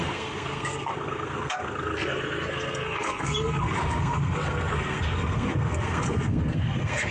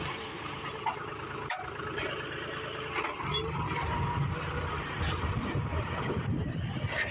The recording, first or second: second